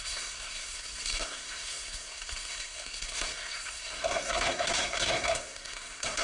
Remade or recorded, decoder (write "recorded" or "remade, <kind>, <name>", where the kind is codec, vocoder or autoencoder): remade, codec, SNAC